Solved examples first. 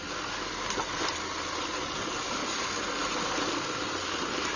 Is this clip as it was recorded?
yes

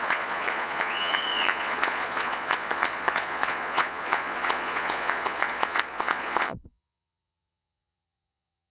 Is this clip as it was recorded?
no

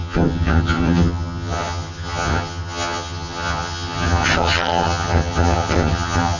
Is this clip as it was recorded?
no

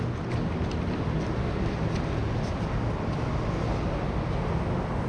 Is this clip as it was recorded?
yes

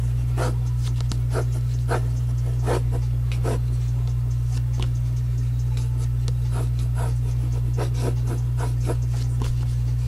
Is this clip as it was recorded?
yes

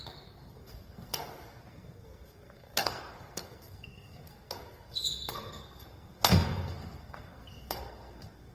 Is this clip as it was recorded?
no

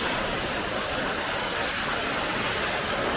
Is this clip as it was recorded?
yes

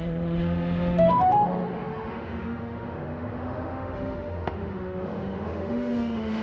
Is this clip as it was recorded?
no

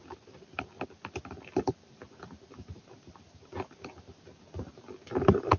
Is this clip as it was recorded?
yes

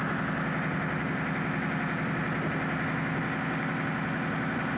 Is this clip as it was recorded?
yes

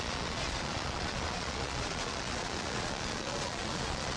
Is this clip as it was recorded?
no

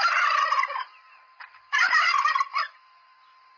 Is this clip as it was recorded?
yes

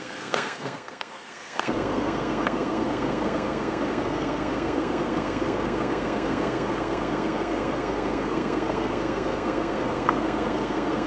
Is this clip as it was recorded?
no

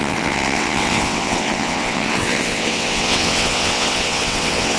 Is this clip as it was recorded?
no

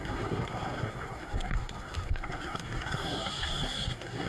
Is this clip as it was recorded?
no